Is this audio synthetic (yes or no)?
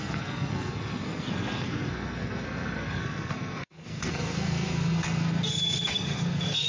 yes